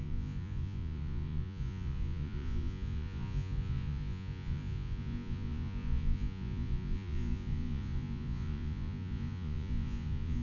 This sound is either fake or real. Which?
fake